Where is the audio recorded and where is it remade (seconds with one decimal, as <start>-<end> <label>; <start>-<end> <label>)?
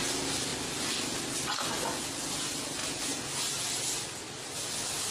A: 0.0-5.1 recorded